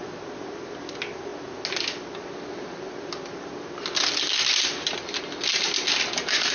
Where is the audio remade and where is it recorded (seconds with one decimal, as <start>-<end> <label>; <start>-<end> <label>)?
0.0-6.5 recorded